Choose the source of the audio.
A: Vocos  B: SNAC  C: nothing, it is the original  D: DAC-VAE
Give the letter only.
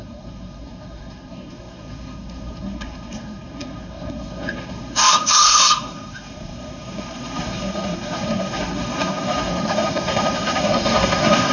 B